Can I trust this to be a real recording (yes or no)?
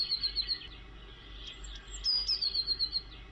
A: yes